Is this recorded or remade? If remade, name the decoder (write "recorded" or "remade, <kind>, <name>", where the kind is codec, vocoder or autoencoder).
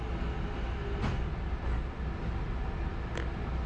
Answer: recorded